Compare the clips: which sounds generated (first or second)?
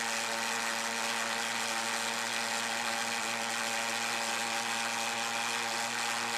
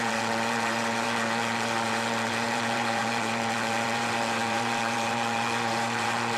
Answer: second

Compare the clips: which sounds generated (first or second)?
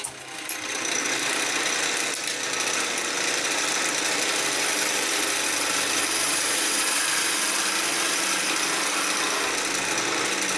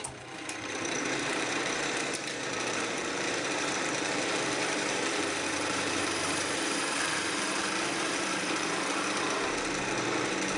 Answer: second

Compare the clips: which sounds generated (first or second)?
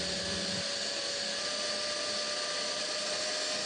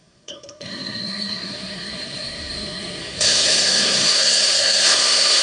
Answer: second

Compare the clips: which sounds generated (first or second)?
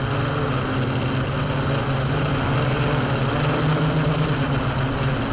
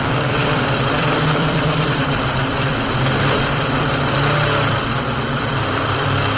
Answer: second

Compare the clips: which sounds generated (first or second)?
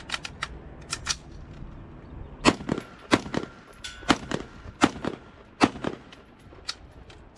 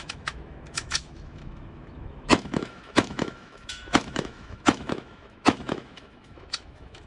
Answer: second